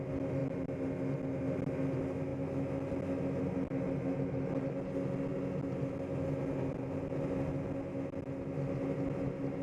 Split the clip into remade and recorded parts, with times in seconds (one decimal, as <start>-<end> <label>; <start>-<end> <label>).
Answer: 0.0-9.6 recorded